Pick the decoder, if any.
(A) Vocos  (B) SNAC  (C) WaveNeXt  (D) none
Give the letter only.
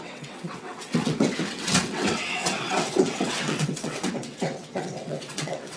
C